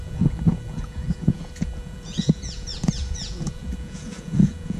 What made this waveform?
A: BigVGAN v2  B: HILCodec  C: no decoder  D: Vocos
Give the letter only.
D